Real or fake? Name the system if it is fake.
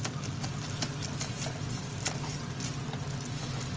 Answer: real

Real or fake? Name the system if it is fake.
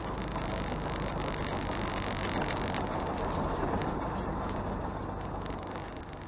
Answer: real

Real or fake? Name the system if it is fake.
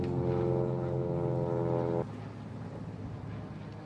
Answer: real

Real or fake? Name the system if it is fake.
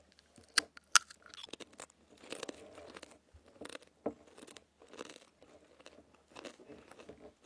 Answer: real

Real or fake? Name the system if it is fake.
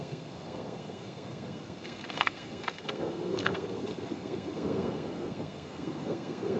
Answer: fake, codec, SNAC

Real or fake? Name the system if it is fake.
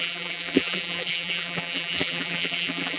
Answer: fake, vocoder, BigVGAN v2